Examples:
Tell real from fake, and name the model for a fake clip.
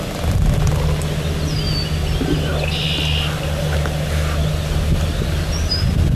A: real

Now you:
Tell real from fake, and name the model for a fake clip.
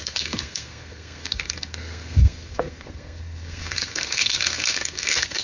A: fake, codec, SNAC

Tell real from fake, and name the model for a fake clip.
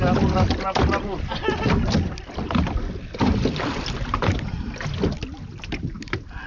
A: real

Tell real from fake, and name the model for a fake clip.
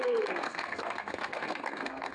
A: fake, codec, SNAC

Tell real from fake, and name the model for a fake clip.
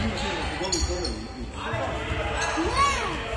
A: real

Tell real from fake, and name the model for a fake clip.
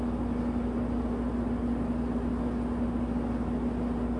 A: real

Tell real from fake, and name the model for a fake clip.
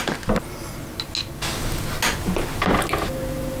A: real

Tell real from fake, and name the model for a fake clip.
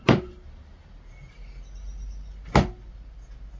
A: real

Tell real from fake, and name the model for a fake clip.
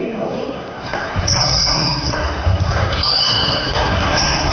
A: fake, codec, SNAC